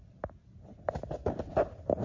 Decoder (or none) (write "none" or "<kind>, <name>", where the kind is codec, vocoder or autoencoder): none